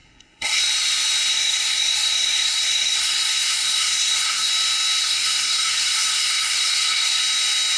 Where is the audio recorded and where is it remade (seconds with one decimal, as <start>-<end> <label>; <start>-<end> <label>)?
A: 0.0-0.6 remade; 0.6-1.3 recorded; 1.3-4.5 remade; 4.5-5.0 recorded; 5.0-7.2 remade; 7.2-7.8 recorded